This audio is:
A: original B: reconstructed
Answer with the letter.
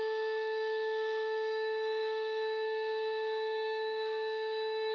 B